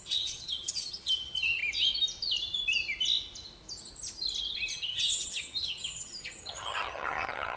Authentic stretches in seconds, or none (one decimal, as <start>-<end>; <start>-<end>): 1.6-4.7

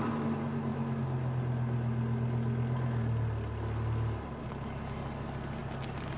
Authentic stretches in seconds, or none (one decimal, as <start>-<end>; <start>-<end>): 0.0-6.2

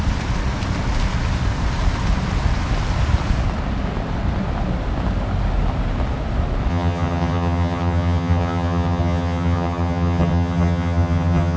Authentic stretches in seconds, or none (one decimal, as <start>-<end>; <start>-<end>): 0.0-6.7

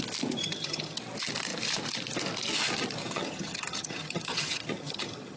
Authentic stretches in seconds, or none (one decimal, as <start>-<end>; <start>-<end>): 0.0-0.4; 1.0-3.0

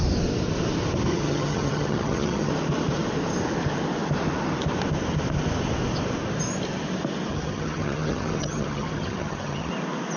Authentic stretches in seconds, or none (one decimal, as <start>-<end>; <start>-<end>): 0.0-1.1; 2.5-7.3; 9.7-10.2